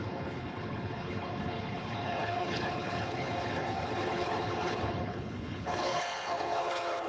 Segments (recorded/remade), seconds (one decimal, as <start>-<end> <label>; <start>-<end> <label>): 0.0-7.1 remade